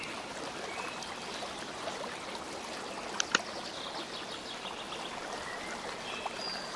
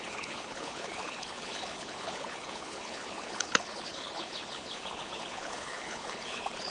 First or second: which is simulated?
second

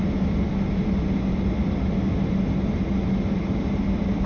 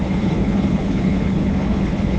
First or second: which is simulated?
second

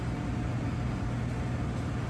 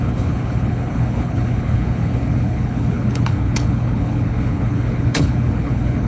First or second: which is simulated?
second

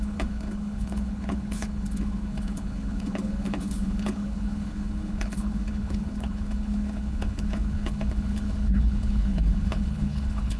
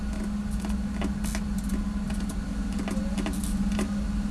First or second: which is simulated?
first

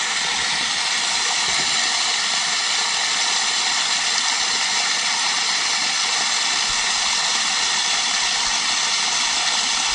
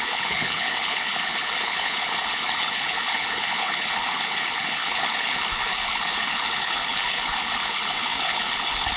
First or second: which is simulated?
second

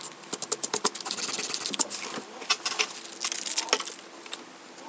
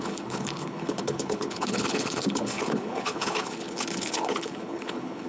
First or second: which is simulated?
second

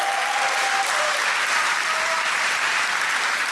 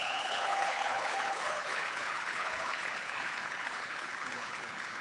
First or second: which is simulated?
second